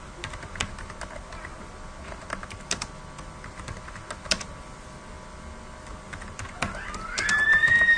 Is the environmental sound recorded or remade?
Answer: recorded